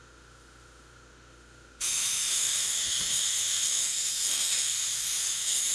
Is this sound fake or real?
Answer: fake